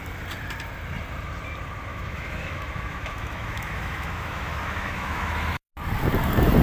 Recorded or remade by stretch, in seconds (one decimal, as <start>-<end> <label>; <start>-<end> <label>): 0.0-1.9 recorded; 1.9-5.7 remade; 5.7-6.6 recorded